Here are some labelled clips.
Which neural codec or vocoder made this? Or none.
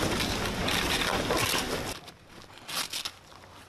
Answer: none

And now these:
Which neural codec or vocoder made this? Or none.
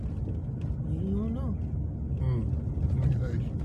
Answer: none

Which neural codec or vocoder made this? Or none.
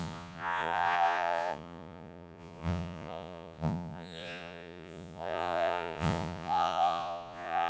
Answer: vocoder, Vocos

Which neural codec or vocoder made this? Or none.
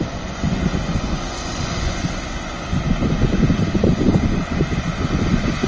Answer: vocoder, Vocos